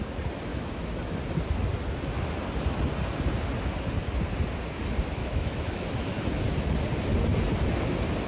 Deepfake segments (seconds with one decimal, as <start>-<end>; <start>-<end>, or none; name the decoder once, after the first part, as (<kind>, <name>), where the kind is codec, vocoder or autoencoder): 0.5-1.2 (autoencoder, DAC-VAE); 5.2-6.2